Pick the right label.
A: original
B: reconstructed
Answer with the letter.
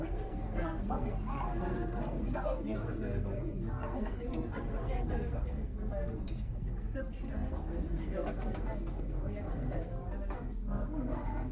B